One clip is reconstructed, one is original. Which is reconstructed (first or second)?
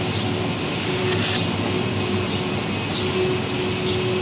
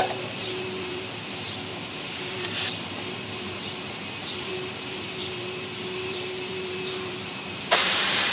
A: second